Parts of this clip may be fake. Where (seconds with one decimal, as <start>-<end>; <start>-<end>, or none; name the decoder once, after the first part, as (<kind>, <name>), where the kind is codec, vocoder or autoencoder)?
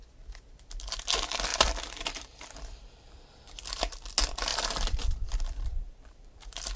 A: 1.5-3.8 (vocoder, BigVGAN v2); 4.5-6.8